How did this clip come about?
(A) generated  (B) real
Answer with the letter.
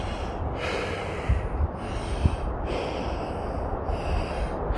B